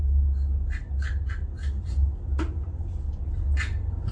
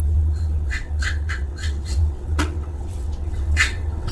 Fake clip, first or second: second